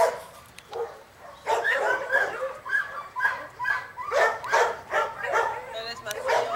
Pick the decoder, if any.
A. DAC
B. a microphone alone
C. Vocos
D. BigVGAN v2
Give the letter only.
D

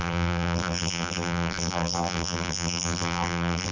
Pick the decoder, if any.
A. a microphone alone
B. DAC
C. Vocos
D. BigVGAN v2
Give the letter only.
D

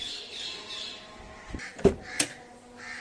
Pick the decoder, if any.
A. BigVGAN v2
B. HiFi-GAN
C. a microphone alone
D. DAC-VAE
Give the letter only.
C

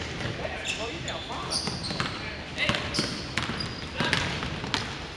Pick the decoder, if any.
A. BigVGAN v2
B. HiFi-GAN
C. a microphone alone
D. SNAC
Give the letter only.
C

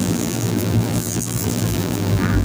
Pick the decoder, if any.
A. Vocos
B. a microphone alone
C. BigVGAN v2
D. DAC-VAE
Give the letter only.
C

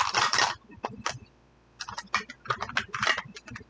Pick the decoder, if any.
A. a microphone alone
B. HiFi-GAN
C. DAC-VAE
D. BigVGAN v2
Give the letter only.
A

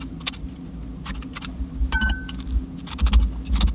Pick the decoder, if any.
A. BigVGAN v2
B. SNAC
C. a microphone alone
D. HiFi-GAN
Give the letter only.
C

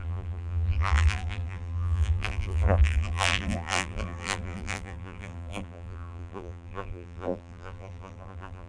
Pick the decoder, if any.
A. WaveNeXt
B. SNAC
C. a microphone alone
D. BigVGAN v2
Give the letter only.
D